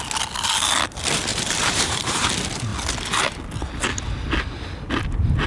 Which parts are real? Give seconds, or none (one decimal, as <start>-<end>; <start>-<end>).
0.0-1.3; 2.3-5.5